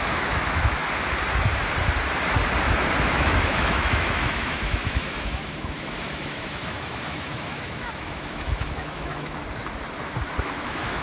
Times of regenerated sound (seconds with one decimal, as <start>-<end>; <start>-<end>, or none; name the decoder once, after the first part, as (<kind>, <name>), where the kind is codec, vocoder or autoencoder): 0.0-0.8 (autoencoder, DAC-VAE); 3.1-9.4; 10.4-11.0